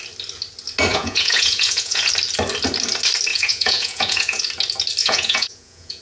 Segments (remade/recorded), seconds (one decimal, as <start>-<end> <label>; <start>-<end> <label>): 0.0-0.9 recorded; 0.9-2.1 remade; 2.1-3.3 recorded; 3.3-4.4 remade; 4.4-5.0 recorded; 5.0-6.0 remade